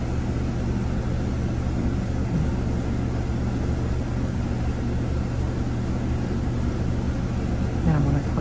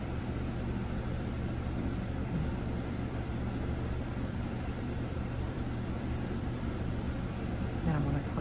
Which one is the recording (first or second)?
first